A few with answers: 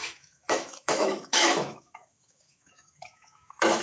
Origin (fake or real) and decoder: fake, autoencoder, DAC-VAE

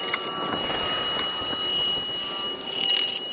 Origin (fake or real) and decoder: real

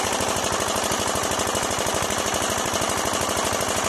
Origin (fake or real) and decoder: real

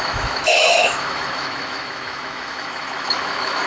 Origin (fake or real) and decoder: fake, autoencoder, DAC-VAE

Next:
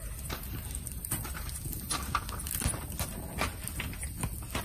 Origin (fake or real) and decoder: real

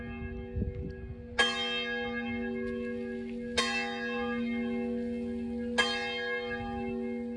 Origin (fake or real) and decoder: real